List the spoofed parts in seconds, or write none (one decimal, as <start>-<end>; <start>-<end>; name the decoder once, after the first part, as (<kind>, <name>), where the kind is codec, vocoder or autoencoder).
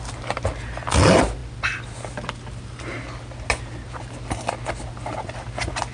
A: none